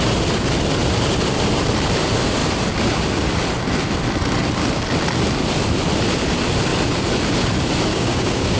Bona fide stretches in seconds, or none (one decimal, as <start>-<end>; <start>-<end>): 0.0-7.9